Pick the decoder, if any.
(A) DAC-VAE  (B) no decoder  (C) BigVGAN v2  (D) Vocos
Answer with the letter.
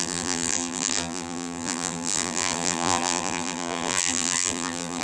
C